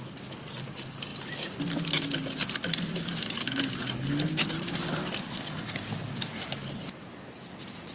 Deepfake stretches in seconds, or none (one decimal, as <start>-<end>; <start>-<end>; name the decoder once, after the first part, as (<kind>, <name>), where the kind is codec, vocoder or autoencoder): none